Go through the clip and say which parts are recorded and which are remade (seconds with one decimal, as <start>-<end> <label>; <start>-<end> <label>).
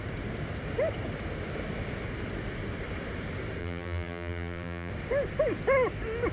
0.0-3.6 recorded; 3.6-4.9 remade; 4.9-6.3 recorded